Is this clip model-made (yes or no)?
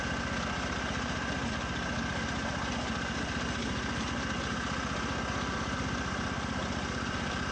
no